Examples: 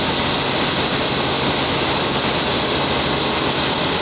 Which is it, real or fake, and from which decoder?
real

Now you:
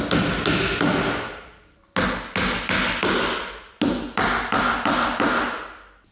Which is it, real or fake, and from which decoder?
real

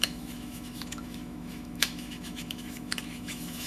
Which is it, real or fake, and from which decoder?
fake, autoencoder, DAC-VAE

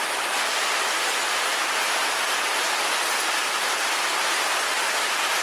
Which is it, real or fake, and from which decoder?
real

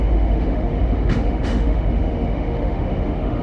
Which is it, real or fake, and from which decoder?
fake, autoencoder, DAC-VAE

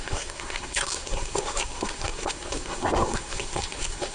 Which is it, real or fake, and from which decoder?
fake, codec, SNAC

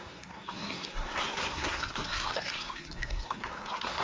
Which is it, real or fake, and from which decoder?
fake, codec, SNAC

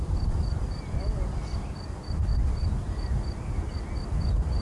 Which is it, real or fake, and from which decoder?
real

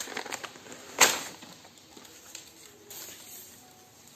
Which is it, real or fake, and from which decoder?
real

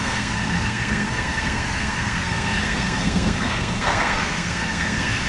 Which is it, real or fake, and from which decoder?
fake, codec, SNAC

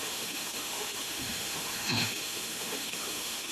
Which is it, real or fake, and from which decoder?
fake, autoencoder, DAC-VAE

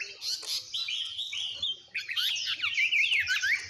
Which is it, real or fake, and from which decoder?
real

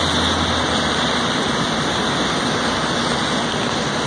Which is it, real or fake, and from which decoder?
real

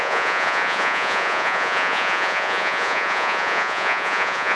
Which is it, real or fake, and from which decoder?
fake, vocoder, Vocos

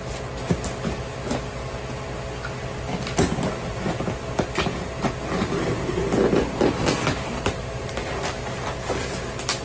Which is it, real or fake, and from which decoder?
real